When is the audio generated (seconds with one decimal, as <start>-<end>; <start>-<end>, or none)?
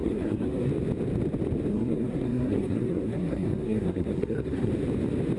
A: 0.0-0.7; 1.7-4.7